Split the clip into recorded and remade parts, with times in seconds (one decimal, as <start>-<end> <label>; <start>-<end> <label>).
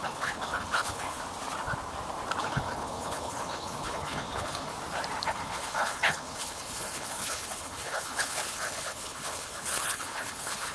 0.0-1.2 remade; 1.2-2.4 recorded; 2.4-4.7 remade; 4.7-5.3 recorded; 5.3-10.7 remade